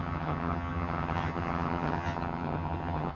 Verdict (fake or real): fake